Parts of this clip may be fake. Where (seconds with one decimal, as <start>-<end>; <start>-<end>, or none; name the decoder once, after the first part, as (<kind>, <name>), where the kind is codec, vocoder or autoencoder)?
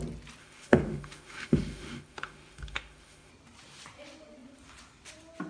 0.4-3.3 (autoencoder, DAC-VAE)